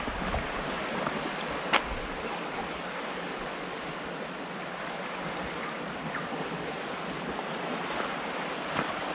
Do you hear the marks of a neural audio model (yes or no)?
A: no